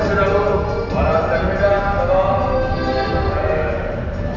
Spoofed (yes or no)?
no